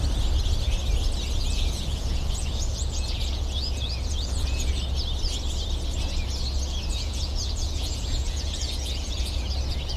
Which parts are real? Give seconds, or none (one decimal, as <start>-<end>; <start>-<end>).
0.0-1.4; 4.7-6.9; 9.5-10.0